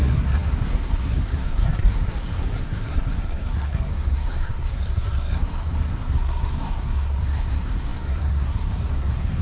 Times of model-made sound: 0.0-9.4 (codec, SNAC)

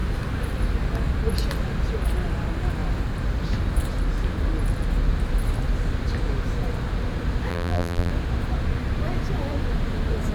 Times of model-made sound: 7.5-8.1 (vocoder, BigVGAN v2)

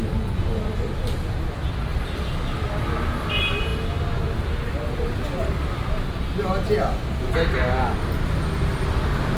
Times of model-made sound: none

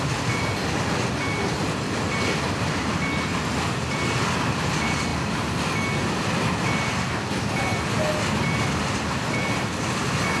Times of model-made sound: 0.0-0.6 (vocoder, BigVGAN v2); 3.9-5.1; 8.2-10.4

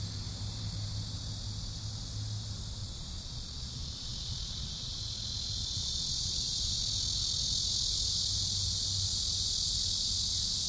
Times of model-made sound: 2.8-4.9 (vocoder, Vocos); 5.6-6.8

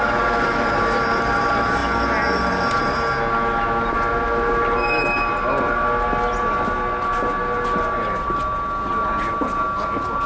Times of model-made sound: none

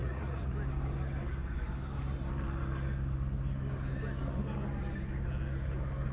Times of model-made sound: 0.0-0.5 (vocoder, Vocos)

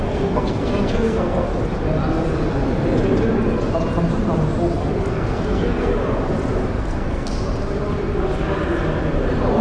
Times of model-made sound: 0.0-1.5 (codec, SNAC); 5.1-5.9; 6.8-7.3